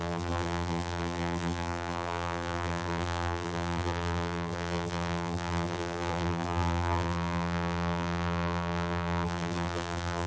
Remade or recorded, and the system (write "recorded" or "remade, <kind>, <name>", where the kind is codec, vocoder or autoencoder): remade, vocoder, BigVGAN v2